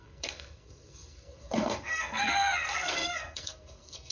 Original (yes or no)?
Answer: no